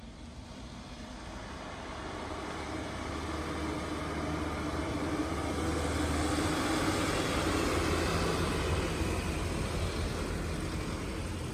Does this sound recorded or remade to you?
recorded